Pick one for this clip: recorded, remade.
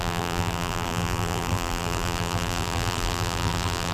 remade